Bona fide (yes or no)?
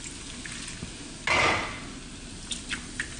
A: yes